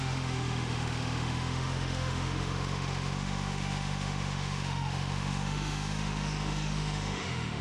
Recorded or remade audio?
remade